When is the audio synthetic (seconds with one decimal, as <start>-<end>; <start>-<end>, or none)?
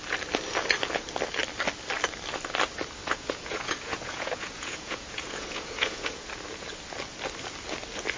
3.0-6.3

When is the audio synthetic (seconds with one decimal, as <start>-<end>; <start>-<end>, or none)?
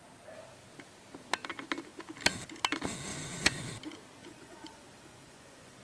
3.1-3.6; 4.2-5.8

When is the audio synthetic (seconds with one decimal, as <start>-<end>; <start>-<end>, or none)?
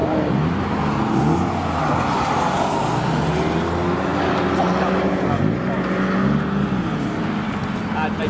none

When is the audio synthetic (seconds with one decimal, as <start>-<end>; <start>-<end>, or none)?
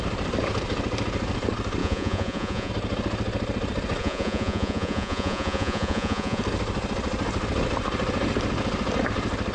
1.8-2.7; 4.0-6.4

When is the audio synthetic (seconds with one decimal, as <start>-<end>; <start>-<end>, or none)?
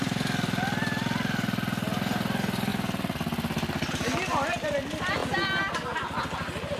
none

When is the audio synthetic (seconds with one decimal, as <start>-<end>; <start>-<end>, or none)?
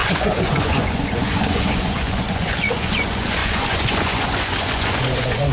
0.0-5.5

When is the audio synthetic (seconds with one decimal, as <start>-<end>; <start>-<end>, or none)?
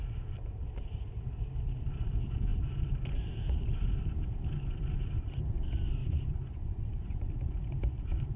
6.0-7.3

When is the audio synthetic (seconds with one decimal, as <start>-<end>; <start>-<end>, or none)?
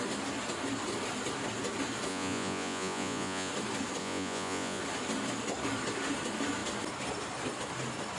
2.1-3.5; 4.0-4.8